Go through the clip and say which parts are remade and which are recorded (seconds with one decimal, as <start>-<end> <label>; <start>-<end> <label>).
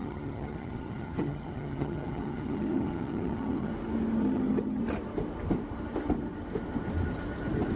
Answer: 0.0-3.7 remade; 3.7-4.2 recorded; 4.2-4.8 remade; 4.8-7.8 recorded